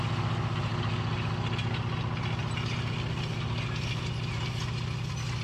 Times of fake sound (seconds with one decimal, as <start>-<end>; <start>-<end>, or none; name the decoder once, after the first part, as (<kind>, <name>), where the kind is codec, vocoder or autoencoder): none